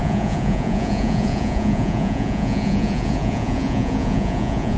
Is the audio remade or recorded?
remade